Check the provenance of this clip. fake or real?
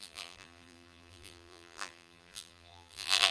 fake